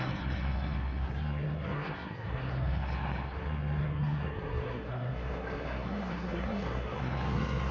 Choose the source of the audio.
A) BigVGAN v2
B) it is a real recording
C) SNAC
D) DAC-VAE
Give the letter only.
C